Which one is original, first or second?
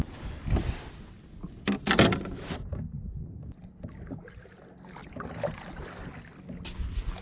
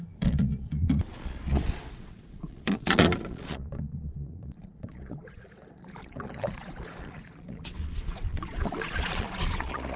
first